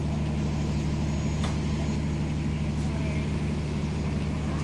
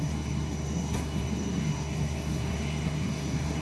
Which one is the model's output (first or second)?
second